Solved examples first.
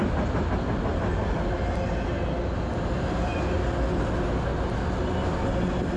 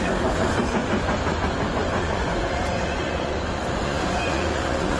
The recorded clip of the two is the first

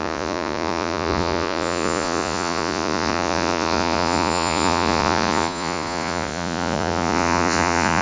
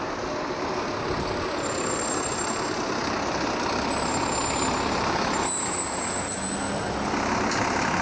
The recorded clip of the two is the second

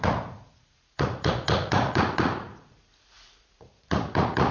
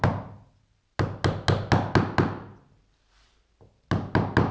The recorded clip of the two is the second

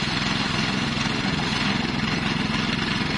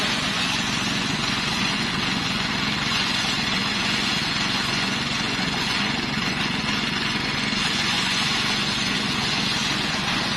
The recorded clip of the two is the first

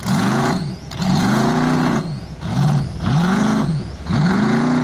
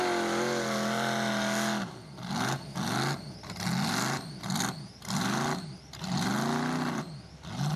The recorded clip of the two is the second